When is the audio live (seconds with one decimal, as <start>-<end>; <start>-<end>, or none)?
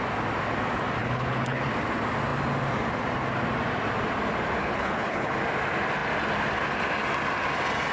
0.0-1.0; 1.7-4.6; 5.3-7.9